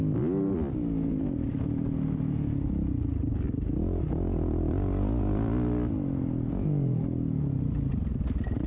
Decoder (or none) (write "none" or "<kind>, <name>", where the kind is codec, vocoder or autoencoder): none